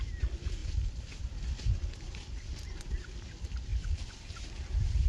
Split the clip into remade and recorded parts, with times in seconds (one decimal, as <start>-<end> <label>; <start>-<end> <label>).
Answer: 0.0-5.1 recorded